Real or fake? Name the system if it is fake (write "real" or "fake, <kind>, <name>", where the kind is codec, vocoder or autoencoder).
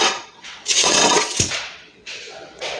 fake, vocoder, WaveNeXt